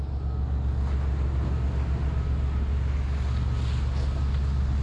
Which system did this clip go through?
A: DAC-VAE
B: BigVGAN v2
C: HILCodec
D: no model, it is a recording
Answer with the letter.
D